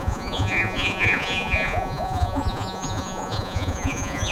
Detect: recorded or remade remade